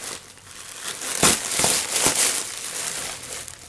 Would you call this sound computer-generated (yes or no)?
no